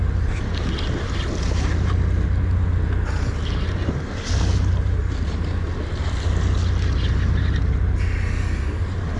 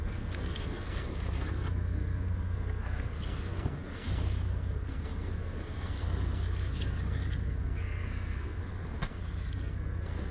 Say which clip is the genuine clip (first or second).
first